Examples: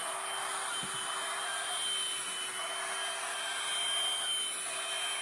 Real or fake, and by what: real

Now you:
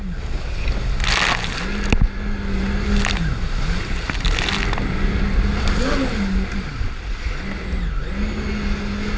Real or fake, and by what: real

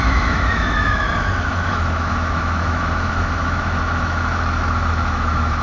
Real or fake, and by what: fake, autoencoder, DAC-VAE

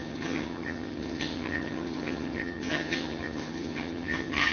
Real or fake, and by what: fake, vocoder, HiFi-GAN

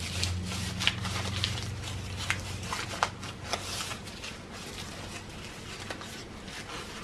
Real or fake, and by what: real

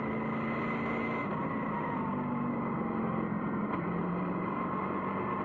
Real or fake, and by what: real